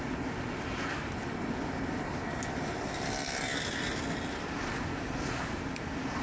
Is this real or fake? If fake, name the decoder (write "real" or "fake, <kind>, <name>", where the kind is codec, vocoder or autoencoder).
real